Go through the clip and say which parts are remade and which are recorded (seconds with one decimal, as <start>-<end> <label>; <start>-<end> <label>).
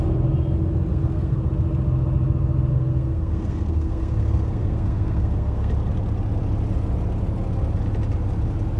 0.0-0.9 recorded; 0.9-1.5 remade; 1.5-2.7 recorded; 2.7-5.7 remade; 5.7-8.8 recorded